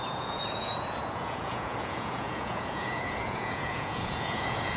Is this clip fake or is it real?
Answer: fake